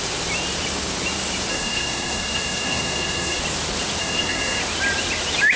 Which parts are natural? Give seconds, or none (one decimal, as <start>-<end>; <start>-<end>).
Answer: 0.0-1.5; 3.4-4.0; 4.6-5.6

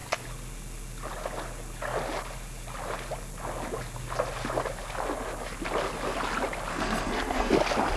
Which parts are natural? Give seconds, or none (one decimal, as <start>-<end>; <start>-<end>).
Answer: 0.0-6.7; 7.5-8.0

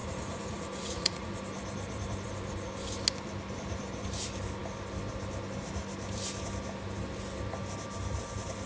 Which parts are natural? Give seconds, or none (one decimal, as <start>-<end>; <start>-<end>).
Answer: 1.3-8.7

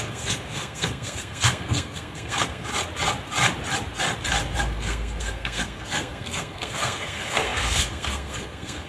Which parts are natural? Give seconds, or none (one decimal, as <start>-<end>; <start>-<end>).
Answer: 2.7-4.6